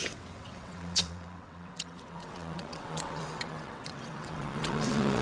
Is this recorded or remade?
remade